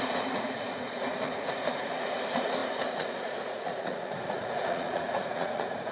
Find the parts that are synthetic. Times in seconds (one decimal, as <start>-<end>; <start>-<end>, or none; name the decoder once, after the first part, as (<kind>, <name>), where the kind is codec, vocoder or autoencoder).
0.0-5.9 (vocoder, Vocos)